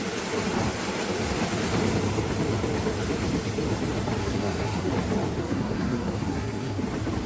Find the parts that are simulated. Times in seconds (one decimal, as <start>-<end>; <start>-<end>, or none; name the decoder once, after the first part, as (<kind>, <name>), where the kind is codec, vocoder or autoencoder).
4.2-4.9 (codec, SNAC); 5.4-6.8